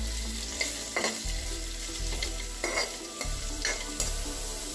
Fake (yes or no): yes